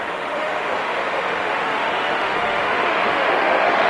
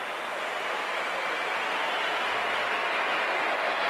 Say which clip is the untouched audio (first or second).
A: second